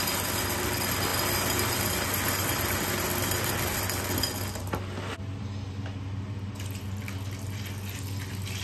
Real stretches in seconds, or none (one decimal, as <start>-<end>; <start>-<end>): 0.0-8.6